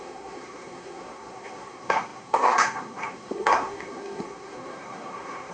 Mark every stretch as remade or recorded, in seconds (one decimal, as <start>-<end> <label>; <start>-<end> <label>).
0.0-5.5 remade